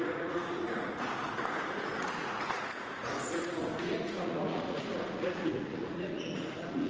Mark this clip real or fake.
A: fake